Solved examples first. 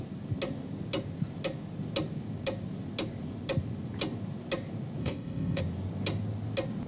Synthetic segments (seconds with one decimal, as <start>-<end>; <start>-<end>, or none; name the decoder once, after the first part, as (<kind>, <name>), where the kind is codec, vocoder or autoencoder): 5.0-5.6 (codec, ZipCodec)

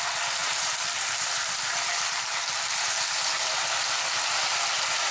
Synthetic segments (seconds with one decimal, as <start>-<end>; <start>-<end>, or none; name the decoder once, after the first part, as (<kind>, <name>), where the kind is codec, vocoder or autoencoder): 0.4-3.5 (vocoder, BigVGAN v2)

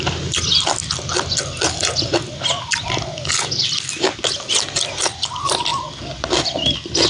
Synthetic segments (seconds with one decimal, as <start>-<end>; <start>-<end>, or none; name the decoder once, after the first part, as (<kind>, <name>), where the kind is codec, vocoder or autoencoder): none

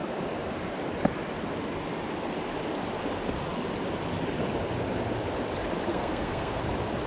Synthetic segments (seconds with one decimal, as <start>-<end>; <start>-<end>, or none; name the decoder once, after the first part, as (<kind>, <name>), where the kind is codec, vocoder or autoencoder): 5.9-6.6 (codec, SNAC)

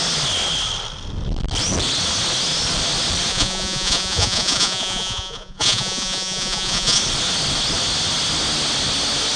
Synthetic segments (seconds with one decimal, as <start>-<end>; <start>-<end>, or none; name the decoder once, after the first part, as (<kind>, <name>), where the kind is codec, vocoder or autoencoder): 3.3-7.0 (vocoder, Vocos)

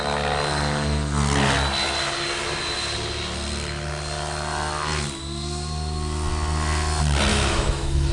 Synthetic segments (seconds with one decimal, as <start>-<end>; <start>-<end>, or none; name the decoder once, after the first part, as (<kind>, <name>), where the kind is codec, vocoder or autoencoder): 7.3-8.1 (autoencoder, DAC-VAE)

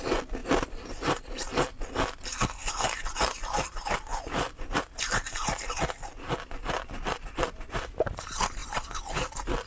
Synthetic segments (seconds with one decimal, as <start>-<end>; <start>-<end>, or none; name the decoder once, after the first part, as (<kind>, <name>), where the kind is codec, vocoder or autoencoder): 2.6-3.5 (vocoder, BigVGAN v2); 4.1-8.2